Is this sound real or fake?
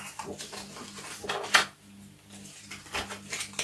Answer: real